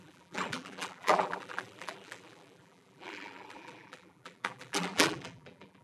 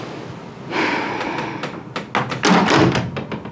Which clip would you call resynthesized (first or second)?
first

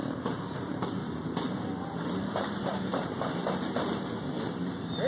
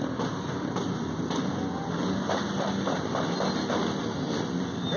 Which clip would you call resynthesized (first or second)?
first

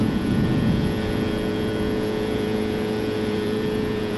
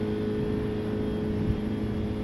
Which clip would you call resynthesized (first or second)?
first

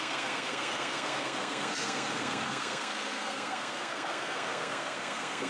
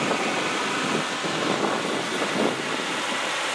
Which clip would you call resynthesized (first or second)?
first